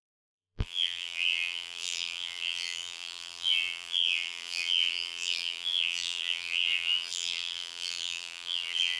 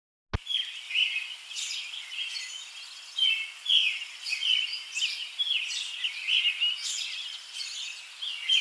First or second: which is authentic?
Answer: second